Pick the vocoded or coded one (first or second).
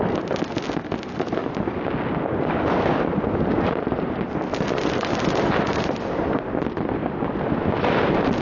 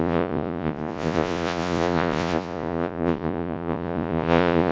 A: second